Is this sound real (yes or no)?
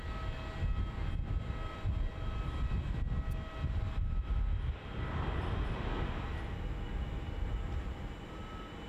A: yes